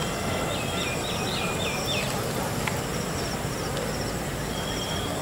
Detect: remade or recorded recorded